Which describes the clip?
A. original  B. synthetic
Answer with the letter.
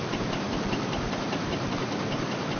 B